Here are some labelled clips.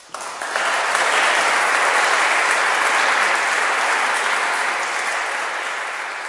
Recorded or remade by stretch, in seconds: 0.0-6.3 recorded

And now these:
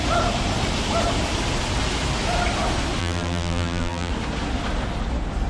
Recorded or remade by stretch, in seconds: 0.0-3.0 recorded; 3.0-4.1 remade; 4.1-5.5 recorded

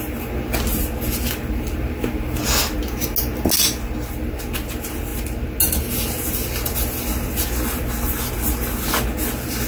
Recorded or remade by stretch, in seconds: 0.0-9.7 recorded

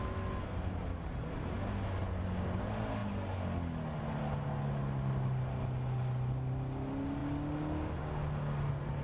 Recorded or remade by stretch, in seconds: 0.0-9.0 recorded

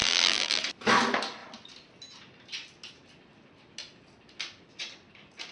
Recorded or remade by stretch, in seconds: 0.0-0.6 remade; 0.6-5.5 recorded

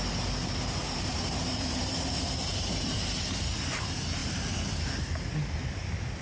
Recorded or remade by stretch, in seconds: 0.0-0.8 recorded; 0.8-3.4 remade; 3.4-6.2 recorded

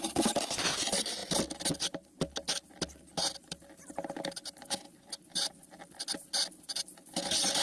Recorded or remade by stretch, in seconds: 0.0-7.6 recorded

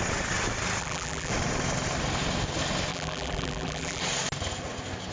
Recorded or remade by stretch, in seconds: 0.0-0.8 recorded; 0.8-1.3 remade; 1.3-2.9 recorded; 2.9-4.0 remade; 4.0-5.1 recorded